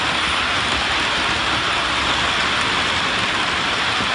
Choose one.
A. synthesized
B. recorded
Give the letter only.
B